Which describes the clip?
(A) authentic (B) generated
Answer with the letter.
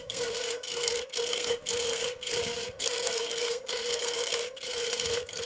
B